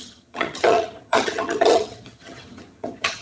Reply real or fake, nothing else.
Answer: fake